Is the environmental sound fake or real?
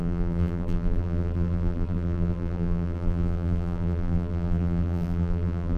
fake